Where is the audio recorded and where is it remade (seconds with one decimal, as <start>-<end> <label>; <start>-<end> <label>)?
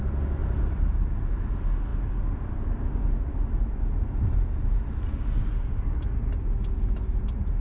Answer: 0.0-0.4 recorded; 0.4-1.5 remade; 1.5-7.6 recorded